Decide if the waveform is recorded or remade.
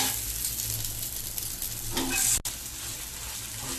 recorded